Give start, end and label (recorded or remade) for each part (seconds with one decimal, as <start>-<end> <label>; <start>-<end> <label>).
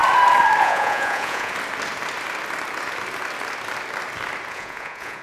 0.0-0.6 recorded; 0.6-1.5 remade; 1.5-4.5 recorded; 4.5-5.2 remade